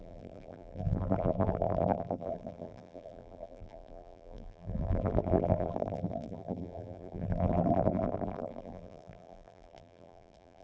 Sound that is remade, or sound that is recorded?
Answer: remade